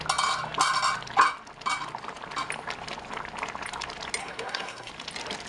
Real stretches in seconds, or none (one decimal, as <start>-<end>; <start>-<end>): 0.0-4.2; 4.9-5.5